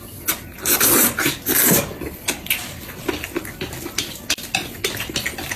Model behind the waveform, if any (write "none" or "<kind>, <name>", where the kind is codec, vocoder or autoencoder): none